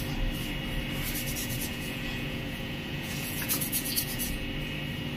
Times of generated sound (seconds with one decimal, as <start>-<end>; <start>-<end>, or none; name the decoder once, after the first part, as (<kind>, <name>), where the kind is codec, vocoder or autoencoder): 1.4-4.5 (vocoder, Vocos)